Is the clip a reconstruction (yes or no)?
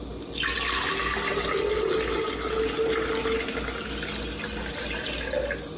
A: no